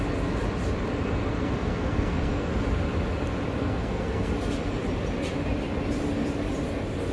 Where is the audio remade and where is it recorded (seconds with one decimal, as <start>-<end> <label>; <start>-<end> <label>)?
0.0-1.3 recorded; 1.3-2.5 remade; 2.5-3.6 recorded; 3.6-4.3 remade; 4.3-7.1 recorded